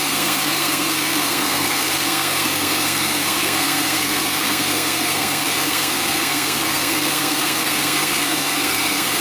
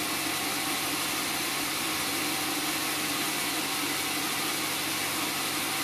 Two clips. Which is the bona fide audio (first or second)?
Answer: second